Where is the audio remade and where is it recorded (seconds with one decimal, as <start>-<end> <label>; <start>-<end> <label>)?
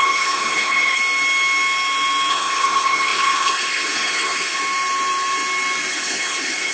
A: 0.0-1.0 remade; 1.0-2.3 recorded; 2.3-4.6 remade; 4.6-5.9 recorded; 5.9-6.7 remade